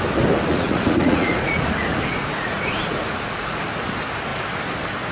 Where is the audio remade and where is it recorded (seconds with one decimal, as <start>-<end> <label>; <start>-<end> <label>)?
0.0-0.5 recorded; 0.5-3.6 remade; 3.6-5.1 recorded